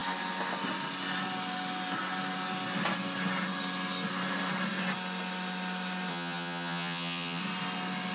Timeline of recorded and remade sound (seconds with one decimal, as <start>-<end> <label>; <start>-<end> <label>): 0.0-6.1 recorded; 6.1-7.4 remade; 7.4-8.1 recorded